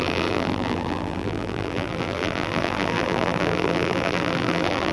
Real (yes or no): no